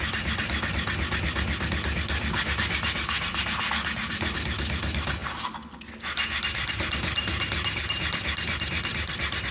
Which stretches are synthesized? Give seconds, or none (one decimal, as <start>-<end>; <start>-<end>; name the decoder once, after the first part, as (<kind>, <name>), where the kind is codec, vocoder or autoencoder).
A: none